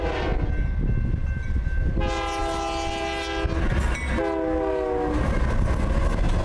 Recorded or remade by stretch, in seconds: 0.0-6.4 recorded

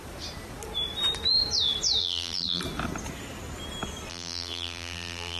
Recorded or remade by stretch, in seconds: 0.0-2.0 recorded; 2.0-2.6 remade; 2.6-4.1 recorded; 4.1-5.4 remade

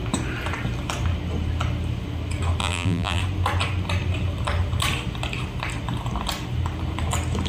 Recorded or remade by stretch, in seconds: 0.0-2.6 recorded; 2.6-3.2 remade; 3.2-7.5 recorded

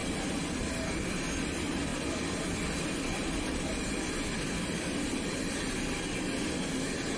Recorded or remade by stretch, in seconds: 0.0-1.9 recorded; 1.9-5.8 remade; 5.8-7.2 recorded

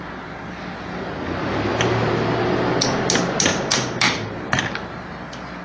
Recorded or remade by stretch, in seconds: 0.0-1.7 recorded; 1.7-2.4 remade; 2.4-3.5 recorded; 3.5-4.6 remade; 4.6-5.6 recorded

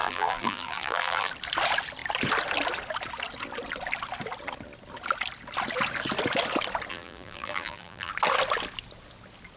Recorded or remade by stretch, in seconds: 0.0-1.3 remade; 1.3-6.9 recorded; 6.9-8.1 remade; 8.1-9.6 recorded

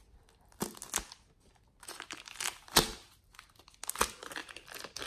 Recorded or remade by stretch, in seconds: 0.0-5.1 recorded